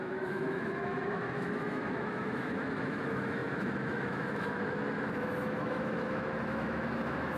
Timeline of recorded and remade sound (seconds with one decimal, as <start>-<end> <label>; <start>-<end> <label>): 0.0-7.4 remade